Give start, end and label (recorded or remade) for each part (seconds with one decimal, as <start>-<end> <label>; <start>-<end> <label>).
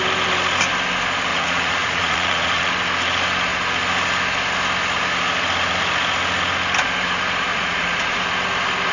0.0-1.3 recorded; 1.3-2.7 remade; 2.7-7.5 recorded; 7.5-8.2 remade; 8.2-8.9 recorded